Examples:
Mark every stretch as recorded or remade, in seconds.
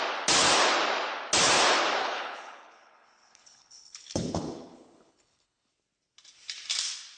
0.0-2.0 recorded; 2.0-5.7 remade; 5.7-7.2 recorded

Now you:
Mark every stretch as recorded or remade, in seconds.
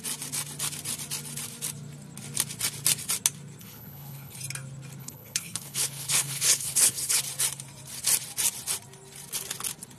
0.0-3.6 recorded; 3.6-4.4 remade; 4.4-5.0 recorded; 5.0-7.2 remade; 7.2-10.0 recorded